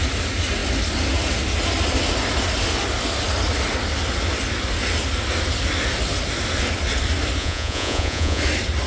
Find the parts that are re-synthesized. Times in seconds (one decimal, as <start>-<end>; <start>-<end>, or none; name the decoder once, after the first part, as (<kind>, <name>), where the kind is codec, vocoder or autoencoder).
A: 7.4-8.4 (vocoder, Vocos)